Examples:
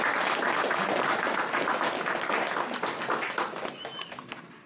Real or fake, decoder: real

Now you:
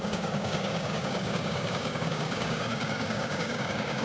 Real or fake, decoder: fake, codec, DAC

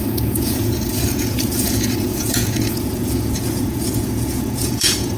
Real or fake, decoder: fake, vocoder, Vocos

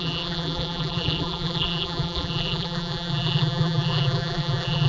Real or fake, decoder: fake, vocoder, BigVGAN v2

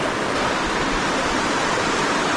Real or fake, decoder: real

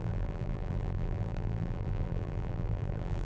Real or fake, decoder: fake, vocoder, BigVGAN v2